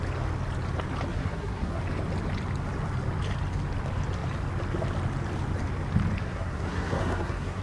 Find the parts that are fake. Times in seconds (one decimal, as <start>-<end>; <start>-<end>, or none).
1.1-1.8; 6.2-7.6